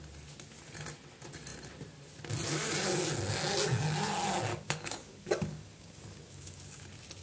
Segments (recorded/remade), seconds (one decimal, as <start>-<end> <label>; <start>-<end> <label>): 0.0-4.5 recorded; 4.5-6.8 remade; 6.8-7.2 recorded